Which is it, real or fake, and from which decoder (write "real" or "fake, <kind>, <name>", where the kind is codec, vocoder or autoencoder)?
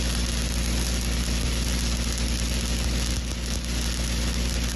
real